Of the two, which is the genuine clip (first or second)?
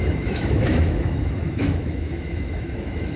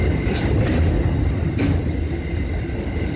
second